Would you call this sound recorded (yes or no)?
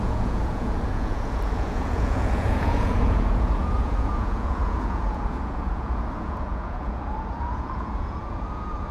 no